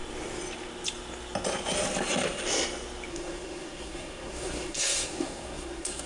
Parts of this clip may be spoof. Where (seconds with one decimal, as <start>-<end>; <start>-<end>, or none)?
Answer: 3.1-6.1